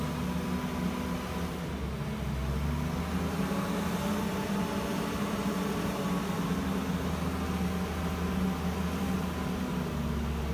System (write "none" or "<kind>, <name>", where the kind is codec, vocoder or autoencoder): none